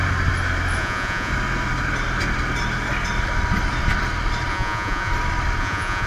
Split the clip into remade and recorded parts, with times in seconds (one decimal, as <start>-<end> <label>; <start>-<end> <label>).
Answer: 0.0-0.8 recorded; 0.8-1.3 remade; 1.3-4.5 recorded; 4.5-5.1 remade; 5.1-5.6 recorded; 5.6-6.1 remade